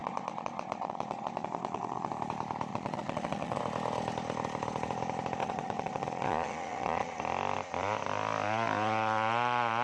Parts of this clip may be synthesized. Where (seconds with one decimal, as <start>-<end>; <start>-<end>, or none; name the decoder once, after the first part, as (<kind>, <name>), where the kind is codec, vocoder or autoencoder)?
0.0-2.1 (vocoder, Vocos); 2.7-3.6; 5.4-7.2